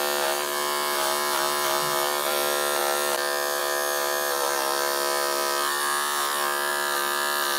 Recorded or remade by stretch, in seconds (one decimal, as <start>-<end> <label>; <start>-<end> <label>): 0.0-7.6 recorded